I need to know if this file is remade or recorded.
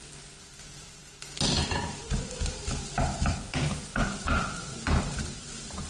remade